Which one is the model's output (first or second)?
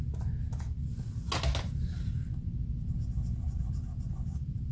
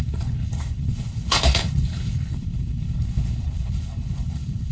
second